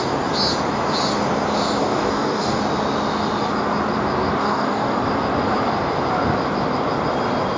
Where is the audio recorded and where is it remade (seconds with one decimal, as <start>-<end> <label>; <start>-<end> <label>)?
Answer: 0.0-1.8 recorded; 1.8-2.6 remade; 2.6-4.4 recorded; 4.4-5.0 remade; 5.0-7.6 recorded

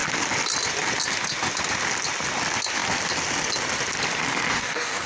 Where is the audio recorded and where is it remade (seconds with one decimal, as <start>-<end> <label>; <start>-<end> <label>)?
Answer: 0.0-4.5 recorded; 4.5-5.1 remade

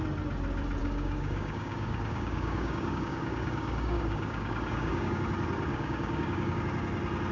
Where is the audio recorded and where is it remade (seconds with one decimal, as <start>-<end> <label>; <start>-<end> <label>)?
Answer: 0.0-0.8 recorded; 0.8-5.2 remade; 5.2-5.7 recorded; 5.7-6.6 remade; 6.6-7.3 recorded

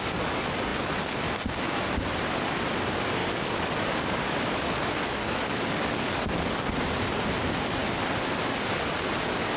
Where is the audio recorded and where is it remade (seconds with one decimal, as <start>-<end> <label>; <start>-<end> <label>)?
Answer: 0.0-3.2 recorded; 3.2-6.7 remade; 6.7-9.6 recorded

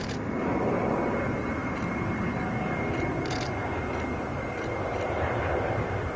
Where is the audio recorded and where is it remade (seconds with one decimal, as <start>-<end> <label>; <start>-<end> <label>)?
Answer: 0.0-6.2 recorded

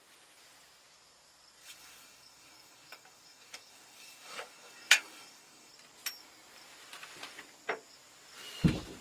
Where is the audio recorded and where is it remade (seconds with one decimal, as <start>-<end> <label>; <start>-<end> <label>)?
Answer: 0.0-1.6 recorded; 1.6-5.7 remade; 5.7-9.0 recorded

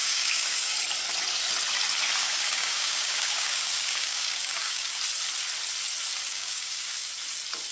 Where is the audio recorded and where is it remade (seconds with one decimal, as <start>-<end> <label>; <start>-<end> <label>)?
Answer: 0.0-0.8 remade; 0.8-2.2 recorded; 2.2-5.0 remade; 5.0-6.3 recorded; 6.3-7.1 remade; 7.1-7.7 recorded

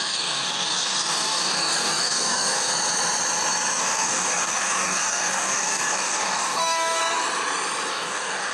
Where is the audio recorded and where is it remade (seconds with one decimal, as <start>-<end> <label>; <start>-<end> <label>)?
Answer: 0.0-2.7 remade; 2.7-3.8 recorded; 3.8-7.0 remade; 7.0-7.9 recorded; 7.9-8.5 remade